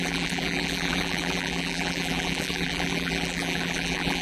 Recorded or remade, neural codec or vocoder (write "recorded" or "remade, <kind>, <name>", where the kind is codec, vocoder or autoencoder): remade, vocoder, BigVGAN v2